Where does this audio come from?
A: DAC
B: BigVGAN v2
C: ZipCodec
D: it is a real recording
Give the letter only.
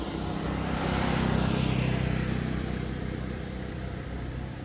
B